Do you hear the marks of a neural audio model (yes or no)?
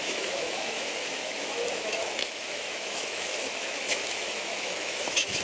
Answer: yes